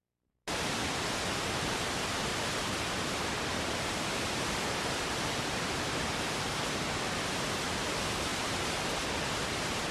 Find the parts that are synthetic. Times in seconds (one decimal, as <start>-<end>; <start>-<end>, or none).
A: 2.3-6.6; 8.3-8.8